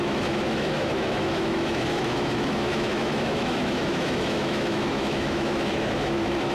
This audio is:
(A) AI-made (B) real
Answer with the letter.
A